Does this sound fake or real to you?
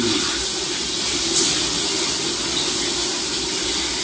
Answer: fake